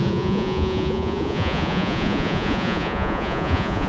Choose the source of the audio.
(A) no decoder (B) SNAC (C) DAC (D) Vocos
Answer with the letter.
D